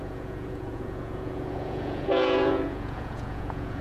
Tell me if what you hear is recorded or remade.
remade